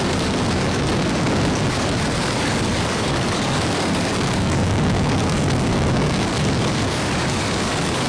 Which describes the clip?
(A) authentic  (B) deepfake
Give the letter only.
B